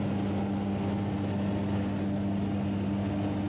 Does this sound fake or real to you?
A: real